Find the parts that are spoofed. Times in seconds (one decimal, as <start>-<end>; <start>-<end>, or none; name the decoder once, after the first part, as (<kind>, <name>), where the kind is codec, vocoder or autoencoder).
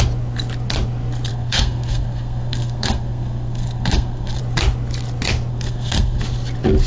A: 1.3-4.4 (codec, SNAC); 5.5-6.2